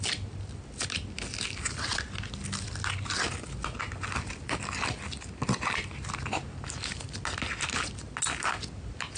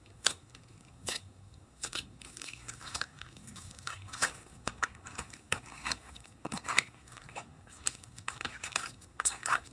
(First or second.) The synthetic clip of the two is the second